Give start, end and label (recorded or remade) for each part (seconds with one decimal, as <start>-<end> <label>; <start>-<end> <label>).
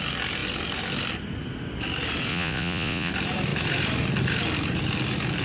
0.0-2.3 recorded; 2.3-3.1 remade; 3.1-5.4 recorded